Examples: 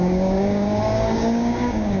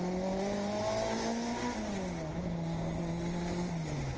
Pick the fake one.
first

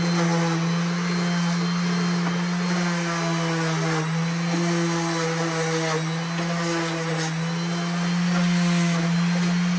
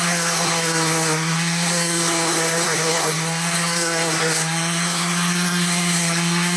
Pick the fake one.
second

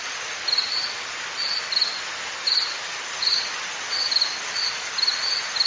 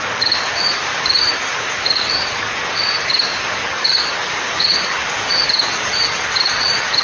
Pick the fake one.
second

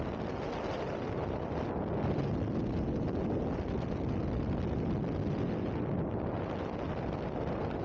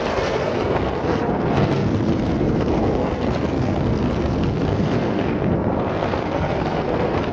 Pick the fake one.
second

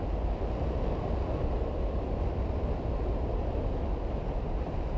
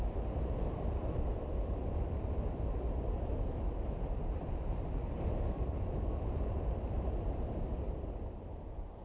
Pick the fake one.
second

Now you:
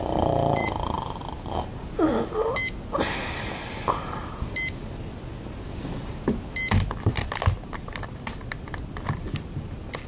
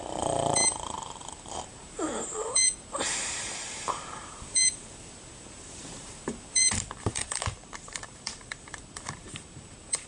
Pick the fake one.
second